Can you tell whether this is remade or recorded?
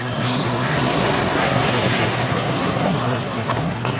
remade